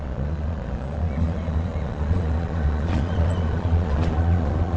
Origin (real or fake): fake